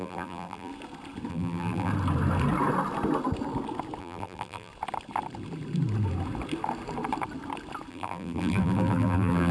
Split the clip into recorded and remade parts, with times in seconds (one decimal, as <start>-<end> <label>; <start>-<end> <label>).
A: 0.0-0.7 remade; 0.7-1.3 recorded; 1.3-1.9 remade; 1.9-4.0 recorded; 4.0-4.7 remade; 4.7-7.9 recorded; 7.9-9.5 remade